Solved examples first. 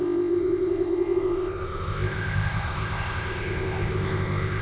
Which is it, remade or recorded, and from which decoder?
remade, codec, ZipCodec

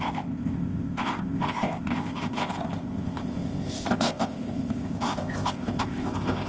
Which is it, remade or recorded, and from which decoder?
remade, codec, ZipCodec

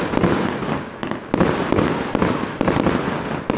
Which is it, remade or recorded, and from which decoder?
recorded